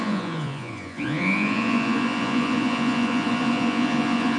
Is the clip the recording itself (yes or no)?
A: no